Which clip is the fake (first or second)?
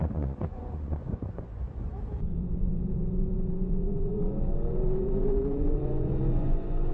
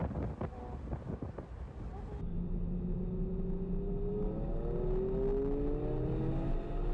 first